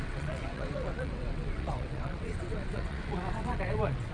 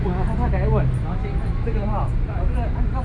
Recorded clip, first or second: second